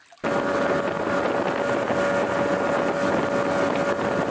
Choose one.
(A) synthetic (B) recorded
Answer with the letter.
B